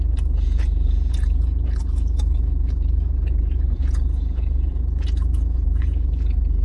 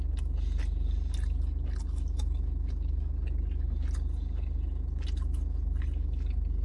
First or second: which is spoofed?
first